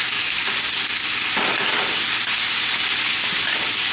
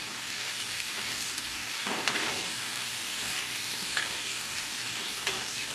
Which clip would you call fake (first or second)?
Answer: second